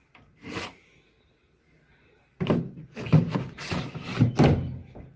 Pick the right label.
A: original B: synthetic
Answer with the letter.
A